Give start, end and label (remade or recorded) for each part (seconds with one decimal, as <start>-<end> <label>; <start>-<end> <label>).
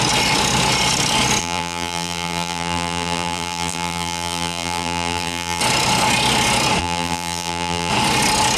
0.0-1.4 recorded; 1.4-5.6 remade; 5.6-6.8 recorded; 6.8-7.9 remade; 7.9-8.6 recorded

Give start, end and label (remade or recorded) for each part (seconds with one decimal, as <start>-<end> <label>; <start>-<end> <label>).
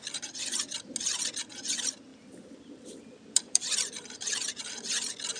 0.0-2.1 recorded; 2.1-4.6 remade; 4.6-5.4 recorded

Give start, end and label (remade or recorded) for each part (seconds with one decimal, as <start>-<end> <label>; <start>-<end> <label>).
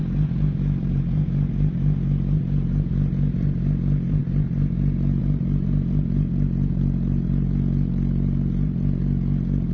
0.0-9.7 remade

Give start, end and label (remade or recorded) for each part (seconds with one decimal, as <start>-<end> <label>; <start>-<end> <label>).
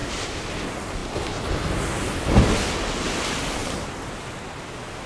0.0-0.5 remade; 0.5-5.1 recorded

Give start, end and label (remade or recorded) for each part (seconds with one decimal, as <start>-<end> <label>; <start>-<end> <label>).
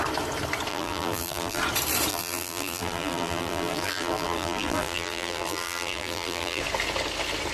0.0-0.7 recorded; 0.7-1.6 remade; 1.6-2.1 recorded; 2.1-6.6 remade; 6.6-7.5 recorded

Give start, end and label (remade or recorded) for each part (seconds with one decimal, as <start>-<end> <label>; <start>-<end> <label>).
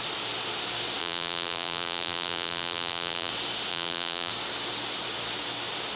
0.0-1.0 recorded; 1.0-3.3 remade; 3.3-3.7 recorded; 3.7-4.3 remade; 4.3-6.0 recorded